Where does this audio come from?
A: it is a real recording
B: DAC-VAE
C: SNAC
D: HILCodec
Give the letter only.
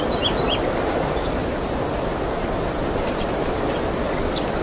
A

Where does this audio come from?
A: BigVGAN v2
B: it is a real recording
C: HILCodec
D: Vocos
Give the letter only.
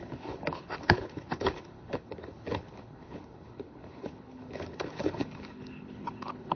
C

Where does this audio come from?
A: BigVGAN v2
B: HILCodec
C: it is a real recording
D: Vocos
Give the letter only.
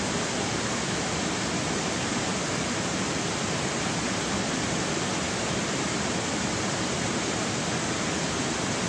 C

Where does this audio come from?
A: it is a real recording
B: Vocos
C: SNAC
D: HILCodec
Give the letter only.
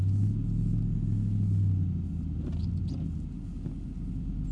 A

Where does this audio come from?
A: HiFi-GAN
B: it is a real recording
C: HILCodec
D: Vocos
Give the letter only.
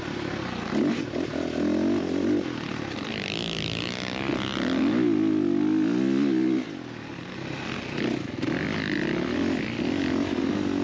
B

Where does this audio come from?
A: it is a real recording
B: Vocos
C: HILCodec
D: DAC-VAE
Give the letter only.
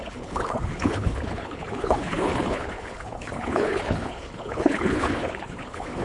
C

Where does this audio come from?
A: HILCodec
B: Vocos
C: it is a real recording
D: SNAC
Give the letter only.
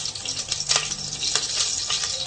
C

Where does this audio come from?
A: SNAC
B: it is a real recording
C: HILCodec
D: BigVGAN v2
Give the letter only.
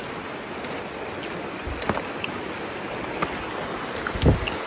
B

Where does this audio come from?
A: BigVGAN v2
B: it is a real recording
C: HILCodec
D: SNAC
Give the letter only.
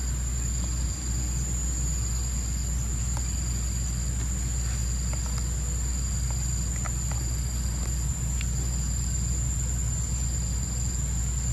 B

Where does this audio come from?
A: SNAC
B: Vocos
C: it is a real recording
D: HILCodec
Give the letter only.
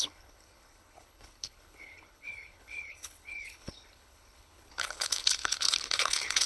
D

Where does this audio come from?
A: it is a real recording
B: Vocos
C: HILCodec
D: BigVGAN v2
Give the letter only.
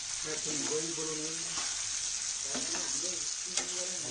A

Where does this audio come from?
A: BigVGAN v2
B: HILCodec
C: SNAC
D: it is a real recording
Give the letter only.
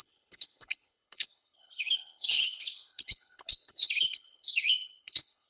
B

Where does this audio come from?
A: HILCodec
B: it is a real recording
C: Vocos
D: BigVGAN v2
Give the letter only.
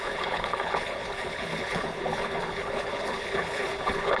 A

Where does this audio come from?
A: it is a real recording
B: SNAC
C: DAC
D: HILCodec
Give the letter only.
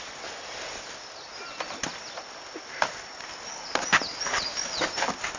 A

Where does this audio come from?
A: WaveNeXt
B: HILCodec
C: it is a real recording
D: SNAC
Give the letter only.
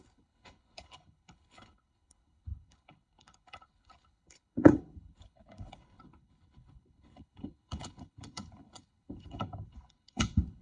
B